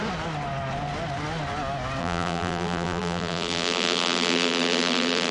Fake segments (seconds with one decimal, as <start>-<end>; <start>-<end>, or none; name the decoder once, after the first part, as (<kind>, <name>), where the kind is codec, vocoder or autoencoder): 2.0-5.3 (vocoder, BigVGAN v2)